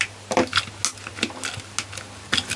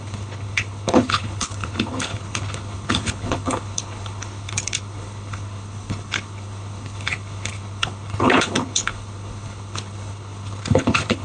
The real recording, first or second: first